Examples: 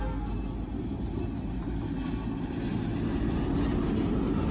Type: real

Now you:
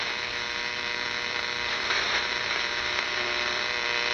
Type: fake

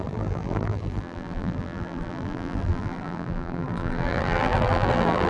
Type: fake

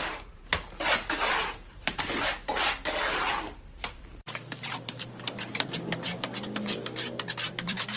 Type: fake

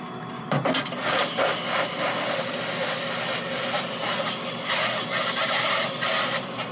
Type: real